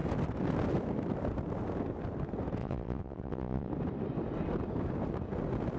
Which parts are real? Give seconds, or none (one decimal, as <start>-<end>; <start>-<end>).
0.0-2.6; 3.7-5.8